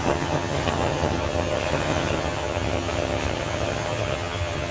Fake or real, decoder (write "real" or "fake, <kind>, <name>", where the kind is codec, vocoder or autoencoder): fake, vocoder, HiFi-GAN